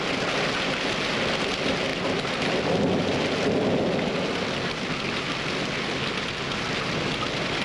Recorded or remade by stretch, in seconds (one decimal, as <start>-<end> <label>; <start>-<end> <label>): 0.0-7.6 recorded